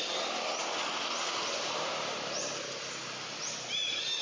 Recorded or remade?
recorded